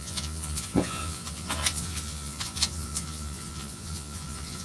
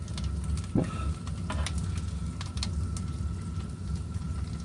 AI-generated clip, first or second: first